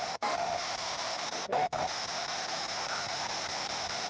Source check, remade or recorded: remade